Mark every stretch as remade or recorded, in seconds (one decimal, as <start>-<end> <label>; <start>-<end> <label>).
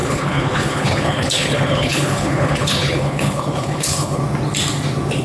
0.0-4.2 remade; 4.2-5.2 recorded